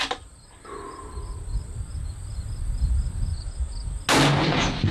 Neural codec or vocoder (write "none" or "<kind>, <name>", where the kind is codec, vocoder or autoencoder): none